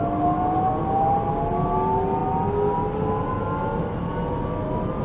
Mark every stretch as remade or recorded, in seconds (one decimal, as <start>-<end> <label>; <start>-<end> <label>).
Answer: 0.0-5.0 recorded